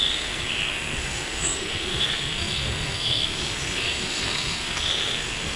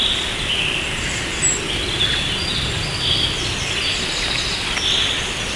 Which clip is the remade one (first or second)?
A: first